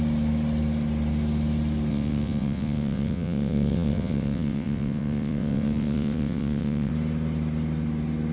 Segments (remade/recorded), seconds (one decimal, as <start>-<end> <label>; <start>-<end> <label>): 0.0-1.9 recorded; 1.9-6.9 remade; 6.9-8.3 recorded